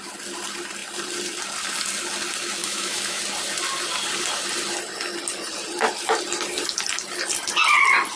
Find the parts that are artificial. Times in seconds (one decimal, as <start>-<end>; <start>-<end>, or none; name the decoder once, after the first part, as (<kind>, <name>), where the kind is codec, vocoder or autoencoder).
2.6-3.2 (autoencoder, DAC-VAE)